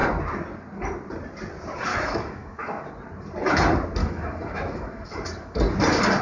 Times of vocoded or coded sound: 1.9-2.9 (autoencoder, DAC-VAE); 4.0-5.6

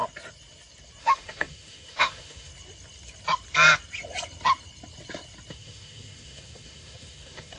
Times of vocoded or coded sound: 1.0-2.5 (autoencoder, DAC-VAE); 5.5-7.6

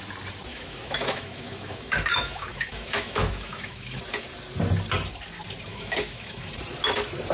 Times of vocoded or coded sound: 0.5-4.0 (autoencoder, DAC-VAE); 5.7-6.5

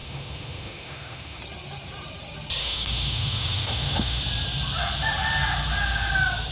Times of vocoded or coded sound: 0.0-1.4 (autoencoder, DAC-VAE); 2.6-4.2